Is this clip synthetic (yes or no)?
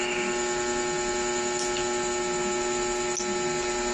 no